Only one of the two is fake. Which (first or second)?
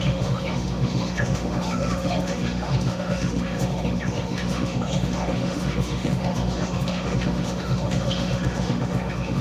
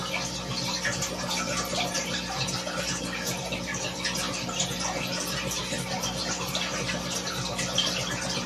first